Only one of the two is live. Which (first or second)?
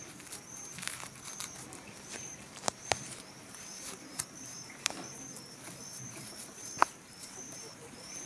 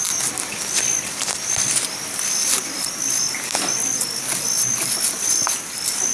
second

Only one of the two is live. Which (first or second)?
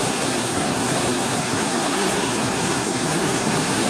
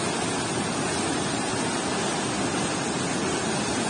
second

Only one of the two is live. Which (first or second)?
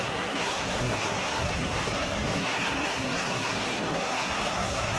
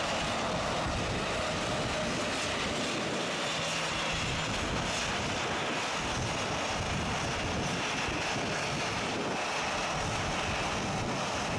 second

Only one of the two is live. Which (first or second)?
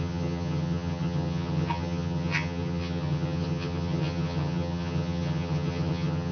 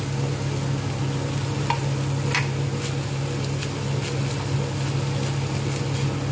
second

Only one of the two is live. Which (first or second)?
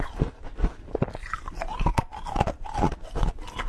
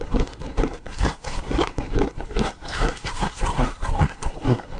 first